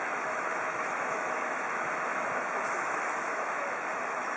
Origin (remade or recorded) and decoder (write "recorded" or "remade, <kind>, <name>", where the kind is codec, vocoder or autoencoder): remade, autoencoder, DAC-VAE